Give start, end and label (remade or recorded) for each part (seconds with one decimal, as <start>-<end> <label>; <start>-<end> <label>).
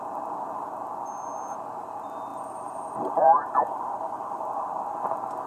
0.0-2.3 recorded; 2.3-4.4 remade; 4.4-5.5 recorded